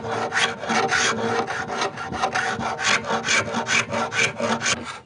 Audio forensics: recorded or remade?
recorded